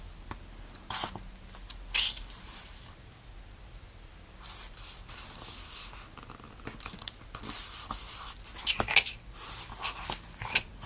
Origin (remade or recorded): recorded